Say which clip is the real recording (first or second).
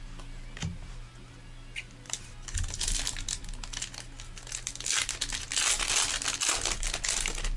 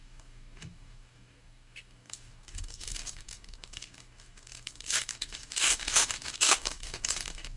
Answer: first